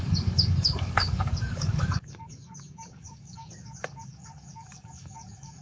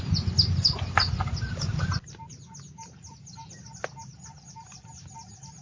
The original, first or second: second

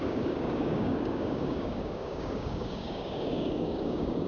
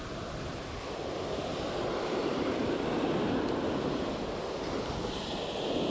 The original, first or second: second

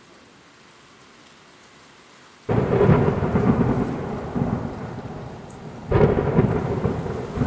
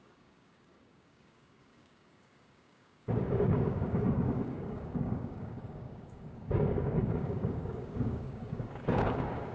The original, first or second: first